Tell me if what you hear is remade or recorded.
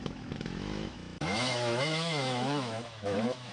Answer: remade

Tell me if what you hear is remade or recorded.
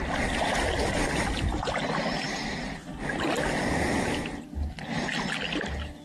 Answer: recorded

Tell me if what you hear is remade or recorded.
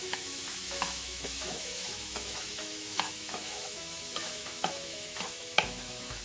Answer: remade